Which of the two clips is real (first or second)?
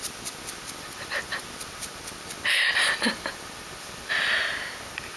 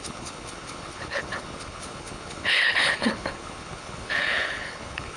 first